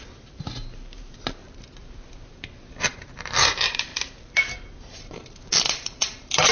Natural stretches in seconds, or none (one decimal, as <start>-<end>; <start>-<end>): 1.4-2.9